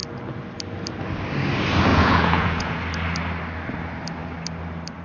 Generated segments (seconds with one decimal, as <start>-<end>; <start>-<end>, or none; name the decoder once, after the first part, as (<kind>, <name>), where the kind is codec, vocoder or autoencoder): 1.9-2.8 (vocoder, Vocos)